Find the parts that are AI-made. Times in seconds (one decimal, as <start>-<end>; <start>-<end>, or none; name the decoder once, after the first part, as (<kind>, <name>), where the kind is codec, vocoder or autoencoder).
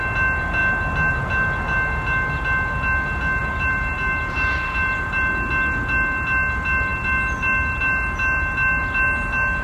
3.4-5.3 (vocoder, BigVGAN v2)